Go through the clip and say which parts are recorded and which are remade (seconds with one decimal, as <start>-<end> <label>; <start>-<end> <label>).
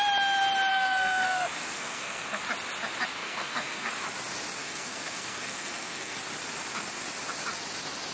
0.0-0.7 recorded; 0.7-2.4 remade; 2.4-3.2 recorded; 3.2-3.9 remade; 3.9-4.6 recorded; 4.6-6.2 remade; 6.2-8.1 recorded